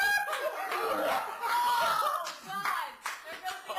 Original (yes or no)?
yes